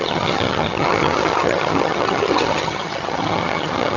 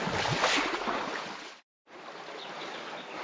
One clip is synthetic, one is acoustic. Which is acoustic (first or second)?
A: second